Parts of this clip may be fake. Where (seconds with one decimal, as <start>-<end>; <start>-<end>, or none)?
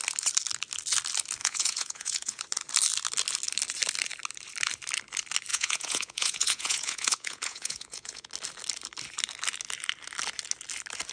1.4-2.4; 5.5-8.3